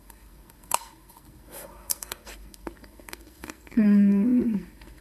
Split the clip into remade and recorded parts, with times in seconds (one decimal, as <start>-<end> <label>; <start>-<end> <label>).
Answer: 0.0-5.0 remade